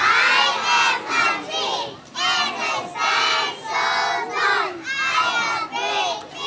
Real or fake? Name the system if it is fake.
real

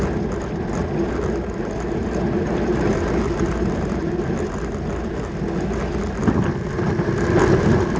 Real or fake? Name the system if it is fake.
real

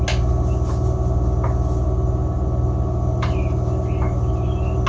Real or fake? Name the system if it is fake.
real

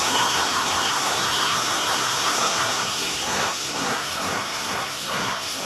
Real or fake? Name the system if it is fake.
fake, codec, SNAC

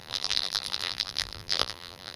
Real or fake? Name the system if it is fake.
fake, vocoder, BigVGAN v2